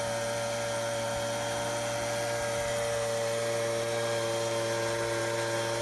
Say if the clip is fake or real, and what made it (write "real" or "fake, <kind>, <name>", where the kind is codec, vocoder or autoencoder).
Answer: real